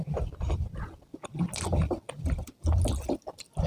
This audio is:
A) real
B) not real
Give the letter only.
A